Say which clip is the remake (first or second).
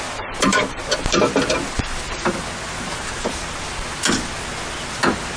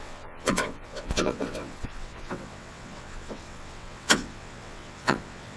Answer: second